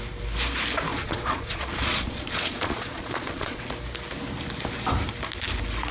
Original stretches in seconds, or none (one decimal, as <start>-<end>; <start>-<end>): 0.0-0.9; 3.7-5.9